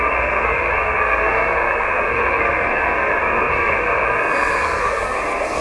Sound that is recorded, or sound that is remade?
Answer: remade